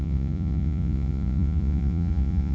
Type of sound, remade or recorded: remade